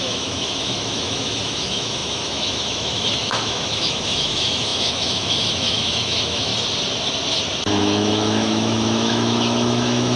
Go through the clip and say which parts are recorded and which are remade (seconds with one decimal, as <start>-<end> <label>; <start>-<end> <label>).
0.0-6.5 remade; 6.5-7.8 recorded; 7.8-10.2 remade